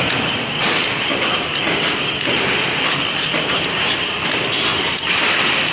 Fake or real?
real